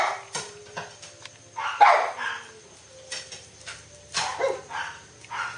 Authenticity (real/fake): real